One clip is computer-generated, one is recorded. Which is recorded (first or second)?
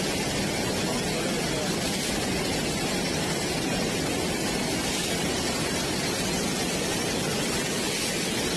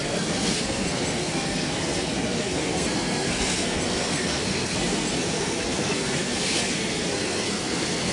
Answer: first